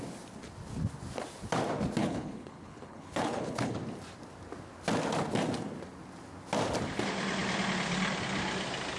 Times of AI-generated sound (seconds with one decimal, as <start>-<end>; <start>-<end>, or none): 2.0-3.7